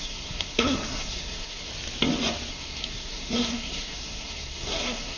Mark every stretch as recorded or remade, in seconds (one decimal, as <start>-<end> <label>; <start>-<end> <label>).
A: 0.0-1.7 remade; 1.7-2.5 recorded; 2.5-5.2 remade